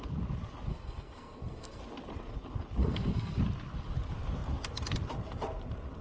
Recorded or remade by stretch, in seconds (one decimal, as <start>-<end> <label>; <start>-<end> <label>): 0.0-0.7 recorded; 0.7-1.8 remade; 1.8-2.8 recorded; 2.8-3.4 remade; 3.4-6.0 recorded